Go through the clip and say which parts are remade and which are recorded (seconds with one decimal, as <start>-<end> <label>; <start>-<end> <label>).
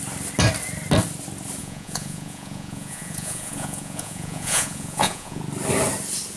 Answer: 0.0-1.6 recorded; 1.6-5.4 remade; 5.4-6.4 recorded